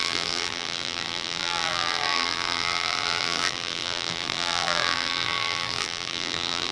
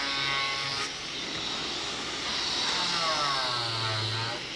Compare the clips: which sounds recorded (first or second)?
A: second